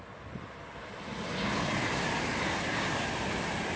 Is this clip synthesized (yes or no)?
no